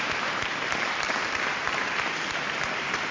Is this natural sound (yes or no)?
no